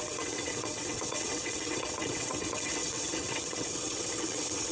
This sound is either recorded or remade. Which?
remade